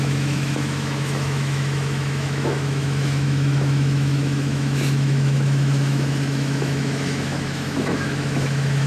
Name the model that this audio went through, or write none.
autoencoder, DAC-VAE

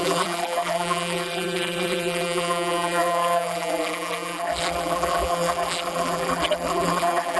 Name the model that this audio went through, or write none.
vocoder, BigVGAN v2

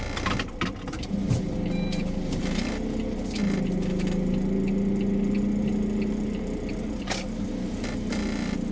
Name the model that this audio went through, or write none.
none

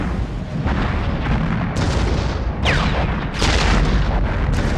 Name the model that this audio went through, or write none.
none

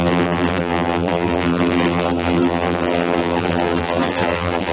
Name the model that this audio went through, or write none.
vocoder, BigVGAN v2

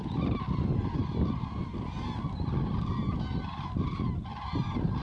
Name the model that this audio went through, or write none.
none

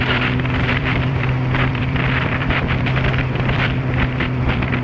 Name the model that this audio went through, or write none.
vocoder, BigVGAN v2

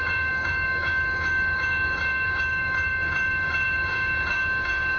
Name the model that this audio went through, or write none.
codec, DAC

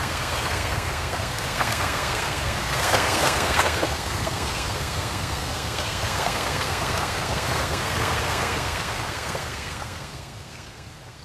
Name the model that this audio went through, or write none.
codec, SNAC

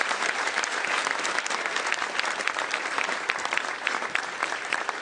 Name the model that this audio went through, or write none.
vocoder, BigVGAN v2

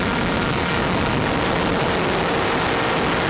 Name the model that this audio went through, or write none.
none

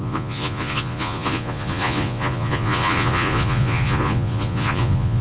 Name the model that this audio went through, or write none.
vocoder, Vocos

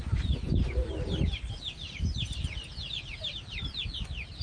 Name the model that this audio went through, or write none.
none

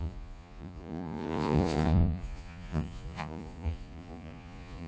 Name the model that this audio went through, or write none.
vocoder, Vocos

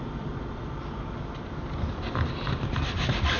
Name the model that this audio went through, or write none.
none